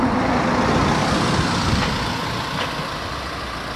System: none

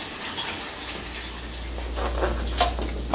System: none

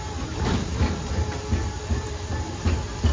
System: none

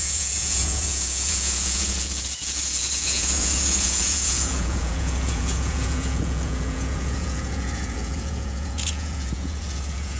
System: vocoder, Vocos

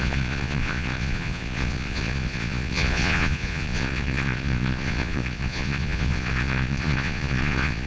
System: vocoder, Vocos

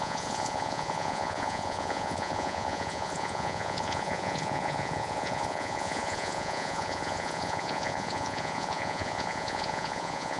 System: vocoder, Vocos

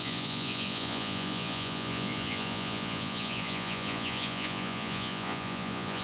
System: vocoder, Vocos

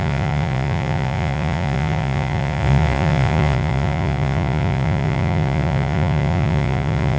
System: vocoder, Vocos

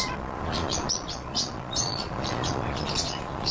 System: vocoder, Vocos